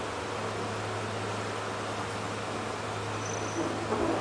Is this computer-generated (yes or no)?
no